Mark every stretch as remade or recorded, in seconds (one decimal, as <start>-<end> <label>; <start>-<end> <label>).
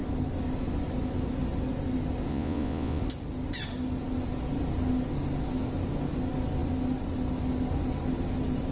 0.0-2.3 recorded; 2.3-3.0 remade; 3.0-8.7 recorded